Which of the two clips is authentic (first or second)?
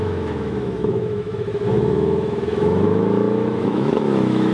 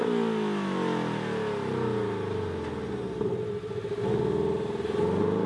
second